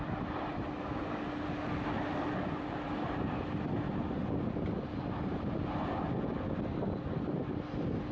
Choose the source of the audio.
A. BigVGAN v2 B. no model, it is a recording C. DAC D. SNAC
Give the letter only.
B